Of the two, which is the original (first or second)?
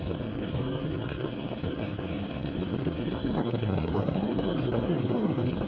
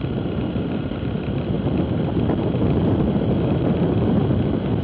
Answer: second